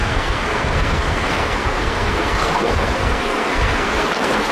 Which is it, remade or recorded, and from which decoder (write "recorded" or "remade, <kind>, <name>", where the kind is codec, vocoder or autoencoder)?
remade, codec, SNAC